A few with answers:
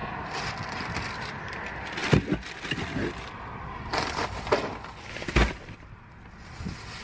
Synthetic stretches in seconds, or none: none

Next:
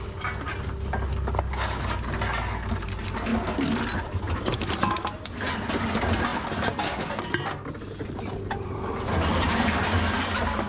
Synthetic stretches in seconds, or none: 3.3-4.0 (vocoder, BigVGAN v2); 6.3-7.1

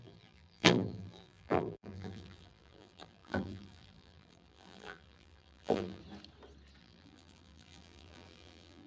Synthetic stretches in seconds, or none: 0.0-6.0 (vocoder, BigVGAN v2); 6.8-8.9

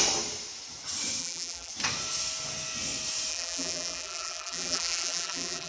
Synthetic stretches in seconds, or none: 1.2-1.7 (vocoder, BigVGAN v2); 3.3-5.7

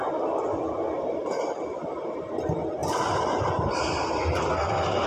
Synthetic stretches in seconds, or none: 2.8-4.2 (vocoder, BigVGAN v2)

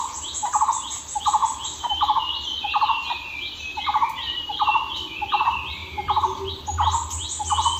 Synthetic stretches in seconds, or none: 1.4-2.2 (vocoder, BigVGAN v2); 3.7-4.5; 5.8-6.5